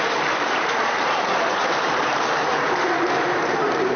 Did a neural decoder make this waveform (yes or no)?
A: yes